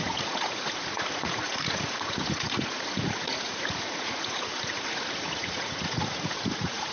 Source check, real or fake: fake